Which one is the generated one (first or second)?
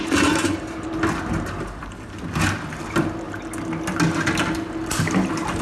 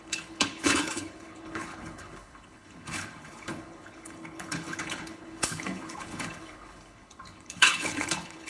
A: second